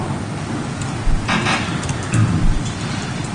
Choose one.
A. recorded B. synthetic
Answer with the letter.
B